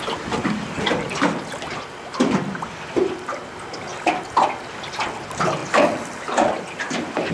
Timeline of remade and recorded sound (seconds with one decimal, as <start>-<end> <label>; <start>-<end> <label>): 0.0-7.3 recorded